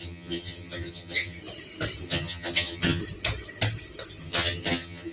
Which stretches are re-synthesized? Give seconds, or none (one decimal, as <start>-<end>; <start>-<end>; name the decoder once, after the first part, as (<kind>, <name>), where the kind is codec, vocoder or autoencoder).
0.0-1.4 (vocoder, HiFi-GAN); 2.0-3.0; 4.2-5.1